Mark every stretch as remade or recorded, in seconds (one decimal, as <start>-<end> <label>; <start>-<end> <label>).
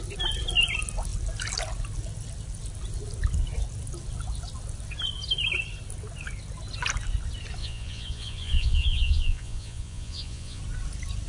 0.0-7.6 recorded; 7.6-10.6 remade; 10.6-11.3 recorded